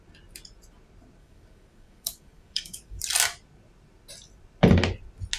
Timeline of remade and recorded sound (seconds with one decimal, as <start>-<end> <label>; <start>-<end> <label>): 0.0-1.2 recorded; 1.2-3.0 remade; 3.0-5.4 recorded